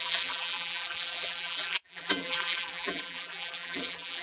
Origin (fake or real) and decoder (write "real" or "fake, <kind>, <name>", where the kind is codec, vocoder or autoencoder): fake, vocoder, BigVGAN v2